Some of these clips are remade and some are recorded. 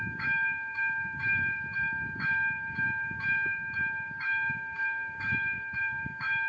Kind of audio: remade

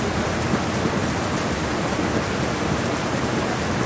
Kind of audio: recorded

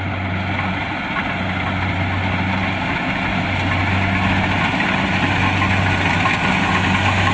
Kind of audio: recorded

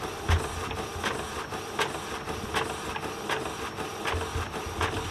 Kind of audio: recorded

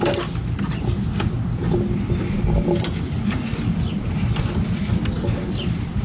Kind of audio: recorded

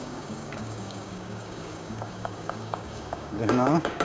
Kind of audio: remade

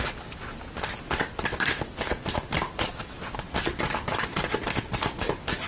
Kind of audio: recorded